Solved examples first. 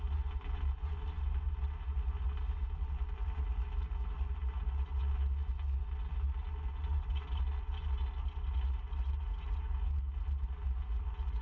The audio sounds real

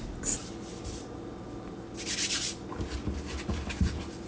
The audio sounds real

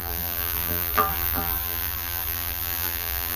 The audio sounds fake